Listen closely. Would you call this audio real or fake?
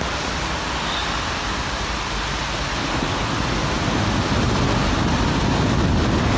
real